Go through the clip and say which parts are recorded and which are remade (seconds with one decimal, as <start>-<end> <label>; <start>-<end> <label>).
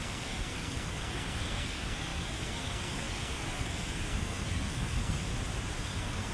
0.0-5.3 remade; 5.3-5.8 recorded; 5.8-6.3 remade